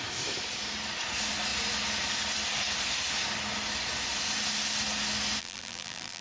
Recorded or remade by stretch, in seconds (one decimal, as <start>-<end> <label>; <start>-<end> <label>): 0.0-5.4 recorded; 5.4-6.2 remade